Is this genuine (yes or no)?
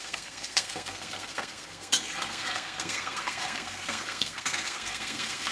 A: no